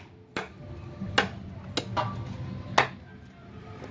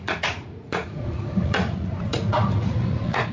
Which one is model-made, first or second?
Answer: second